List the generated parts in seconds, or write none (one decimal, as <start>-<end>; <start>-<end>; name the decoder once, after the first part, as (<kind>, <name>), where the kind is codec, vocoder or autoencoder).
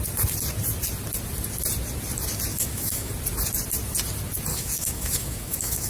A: 2.5-3.1 (autoencoder, DAC-VAE); 4.5-5.9